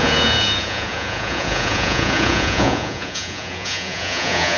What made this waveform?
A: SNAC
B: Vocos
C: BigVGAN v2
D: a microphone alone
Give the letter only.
B